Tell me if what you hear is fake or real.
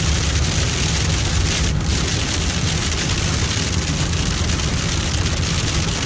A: real